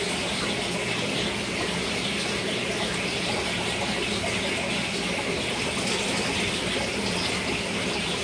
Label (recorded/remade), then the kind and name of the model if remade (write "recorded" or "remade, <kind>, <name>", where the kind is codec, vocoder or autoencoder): recorded